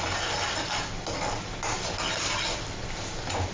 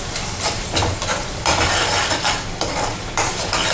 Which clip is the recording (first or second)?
first